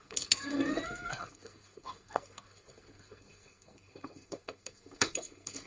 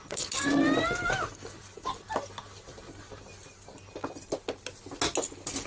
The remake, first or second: first